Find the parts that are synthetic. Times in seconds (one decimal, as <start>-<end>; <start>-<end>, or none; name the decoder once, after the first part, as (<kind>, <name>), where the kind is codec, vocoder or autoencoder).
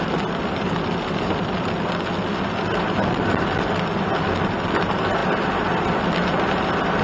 none